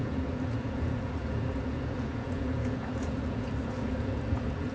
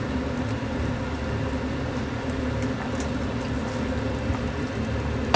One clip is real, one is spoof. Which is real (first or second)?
second